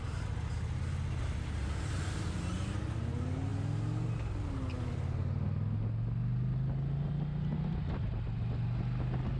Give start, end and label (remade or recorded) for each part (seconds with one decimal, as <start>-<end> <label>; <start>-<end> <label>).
0.0-9.4 recorded